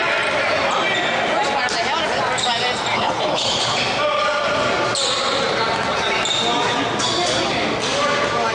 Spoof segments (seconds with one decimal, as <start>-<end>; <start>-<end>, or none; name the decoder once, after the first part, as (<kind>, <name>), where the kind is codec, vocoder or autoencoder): 2.9-3.8 (codec, HILCodec)